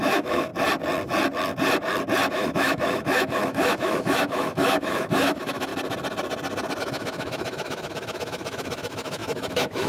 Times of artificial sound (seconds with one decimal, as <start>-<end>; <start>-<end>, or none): 0.0-0.5; 2.3-5.7; 6.8-9.9